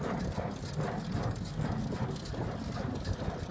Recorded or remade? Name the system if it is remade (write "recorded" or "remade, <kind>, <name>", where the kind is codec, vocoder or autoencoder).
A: recorded